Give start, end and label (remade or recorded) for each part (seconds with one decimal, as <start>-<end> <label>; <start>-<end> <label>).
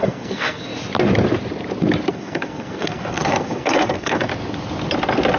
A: 0.0-0.7 remade; 0.7-2.1 recorded; 2.1-4.3 remade; 4.3-5.4 recorded